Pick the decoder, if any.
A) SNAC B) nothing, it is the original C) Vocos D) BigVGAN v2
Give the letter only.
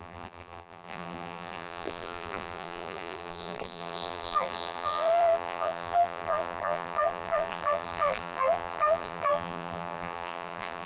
D